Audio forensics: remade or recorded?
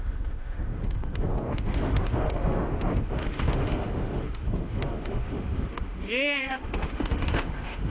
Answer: remade